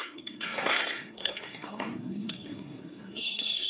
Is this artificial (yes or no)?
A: yes